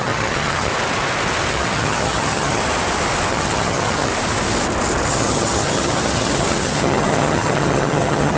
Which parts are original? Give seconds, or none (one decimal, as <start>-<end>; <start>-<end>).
0.7-1.5; 2.6-3.3; 4.1-5.1